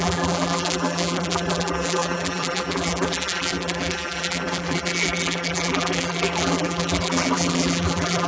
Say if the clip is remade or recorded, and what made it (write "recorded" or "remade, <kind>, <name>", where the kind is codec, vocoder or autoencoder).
remade, vocoder, BigVGAN v2